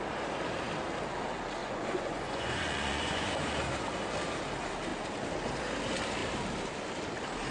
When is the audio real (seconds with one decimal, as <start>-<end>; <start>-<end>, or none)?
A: 0.0-1.6; 3.3-7.5